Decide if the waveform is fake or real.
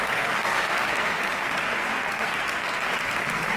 fake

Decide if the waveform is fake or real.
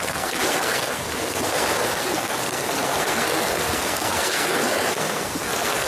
fake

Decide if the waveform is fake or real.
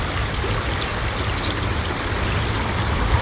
real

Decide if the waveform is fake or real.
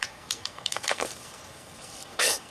fake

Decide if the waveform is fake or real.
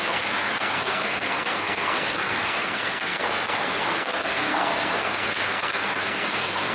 fake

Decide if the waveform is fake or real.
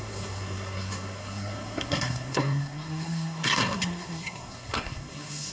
fake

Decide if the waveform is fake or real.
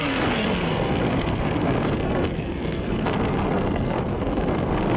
fake